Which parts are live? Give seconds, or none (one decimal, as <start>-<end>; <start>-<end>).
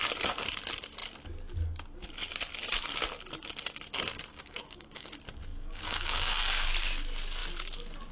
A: 0.0-4.3; 5.1-5.5; 6.7-8.1